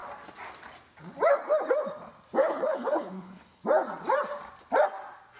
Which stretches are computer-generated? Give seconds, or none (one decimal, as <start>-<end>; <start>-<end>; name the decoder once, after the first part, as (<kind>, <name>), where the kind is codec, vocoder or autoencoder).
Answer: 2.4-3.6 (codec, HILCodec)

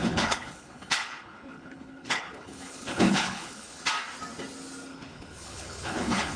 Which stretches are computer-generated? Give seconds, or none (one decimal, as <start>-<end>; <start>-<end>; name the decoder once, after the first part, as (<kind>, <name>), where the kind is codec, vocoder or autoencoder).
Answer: 0.0-3.8 (codec, HILCodec); 4.9-6.4

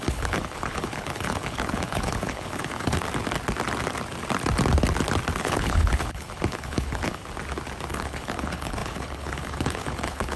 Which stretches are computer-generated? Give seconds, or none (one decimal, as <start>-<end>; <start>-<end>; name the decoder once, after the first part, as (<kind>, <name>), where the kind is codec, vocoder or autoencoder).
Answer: 0.0-3.1 (codec, HILCodec); 5.4-7.2; 7.9-10.4

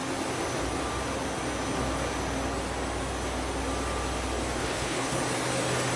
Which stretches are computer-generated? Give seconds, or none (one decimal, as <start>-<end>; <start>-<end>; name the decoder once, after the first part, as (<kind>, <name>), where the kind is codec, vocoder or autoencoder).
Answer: 4.6-5.2 (codec, HILCodec)